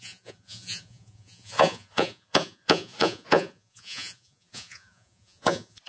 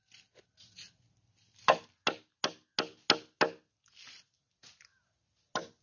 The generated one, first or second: first